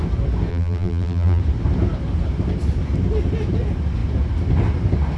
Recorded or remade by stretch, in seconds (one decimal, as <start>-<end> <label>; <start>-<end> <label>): 0.0-0.5 recorded; 0.5-1.4 remade; 1.4-5.2 recorded